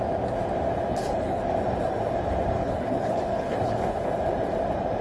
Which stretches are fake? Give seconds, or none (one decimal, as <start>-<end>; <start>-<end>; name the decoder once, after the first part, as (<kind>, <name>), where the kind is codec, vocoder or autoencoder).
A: 0.9-1.4 (codec, HILCodec); 2.6-4.1